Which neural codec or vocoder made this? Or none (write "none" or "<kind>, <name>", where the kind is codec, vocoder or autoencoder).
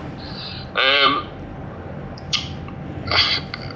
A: vocoder, BigVGAN v2